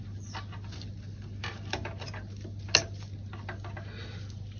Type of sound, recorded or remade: recorded